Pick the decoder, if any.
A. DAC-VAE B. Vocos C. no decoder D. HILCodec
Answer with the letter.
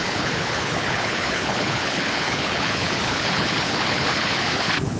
D